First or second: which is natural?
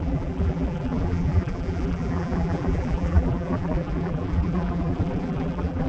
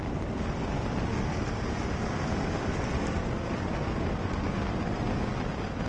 second